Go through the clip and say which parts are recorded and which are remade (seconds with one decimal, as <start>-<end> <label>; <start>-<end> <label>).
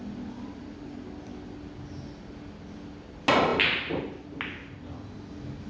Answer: 0.0-5.7 recorded